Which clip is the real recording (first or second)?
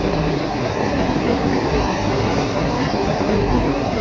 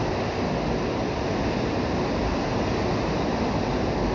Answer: second